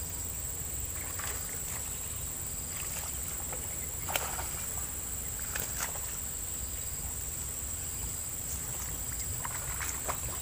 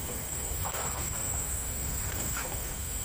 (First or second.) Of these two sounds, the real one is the first